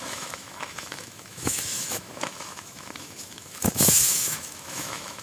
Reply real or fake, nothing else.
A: fake